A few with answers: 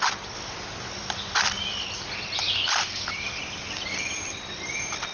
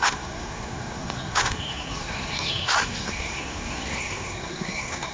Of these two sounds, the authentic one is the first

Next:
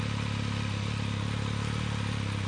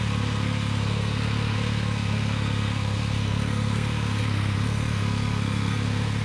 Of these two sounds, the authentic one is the first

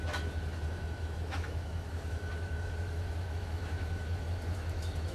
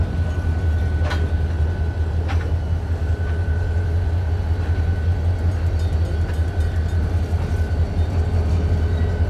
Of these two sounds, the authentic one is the second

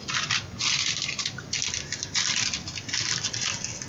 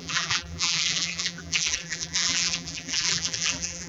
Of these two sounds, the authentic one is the first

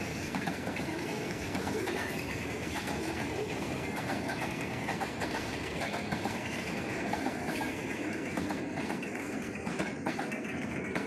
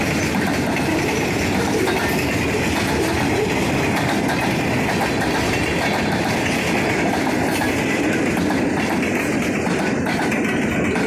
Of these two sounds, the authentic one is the second